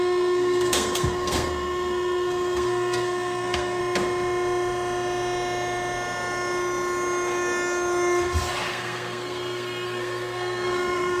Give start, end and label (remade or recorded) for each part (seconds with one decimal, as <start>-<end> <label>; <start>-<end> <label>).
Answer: 0.0-3.8 remade; 3.8-8.7 recorded; 8.7-11.2 remade